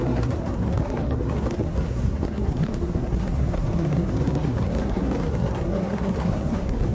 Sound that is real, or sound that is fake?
fake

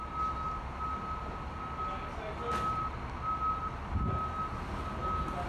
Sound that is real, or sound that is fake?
real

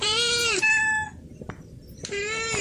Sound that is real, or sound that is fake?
real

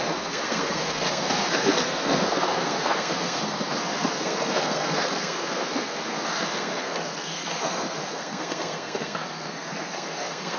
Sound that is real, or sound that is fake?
fake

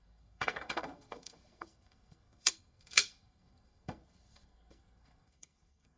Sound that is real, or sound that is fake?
fake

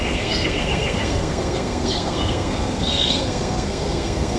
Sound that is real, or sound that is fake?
fake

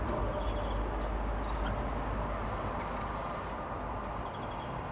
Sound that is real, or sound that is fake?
real